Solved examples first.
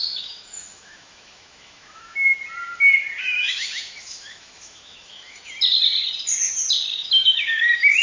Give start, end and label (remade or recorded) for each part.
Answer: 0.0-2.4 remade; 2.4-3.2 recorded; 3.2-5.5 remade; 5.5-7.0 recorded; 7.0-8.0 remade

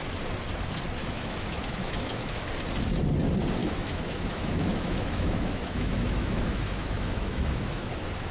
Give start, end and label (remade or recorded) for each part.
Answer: 0.0-1.0 recorded; 1.0-2.4 remade; 2.4-3.6 recorded; 3.6-7.9 remade; 7.9-8.3 recorded

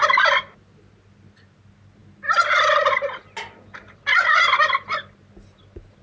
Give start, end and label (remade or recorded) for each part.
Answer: 0.0-6.0 recorded

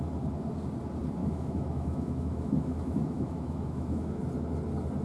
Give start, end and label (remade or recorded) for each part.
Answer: 0.0-1.2 recorded; 1.2-4.2 remade; 4.2-5.0 recorded

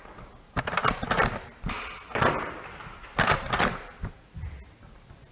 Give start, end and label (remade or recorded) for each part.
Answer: 0.0-5.3 recorded

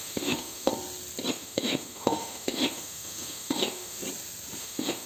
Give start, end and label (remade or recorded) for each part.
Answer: 0.0-0.7 remade; 0.7-1.3 recorded; 1.3-4.0 remade; 4.0-4.6 recorded; 4.6-5.1 remade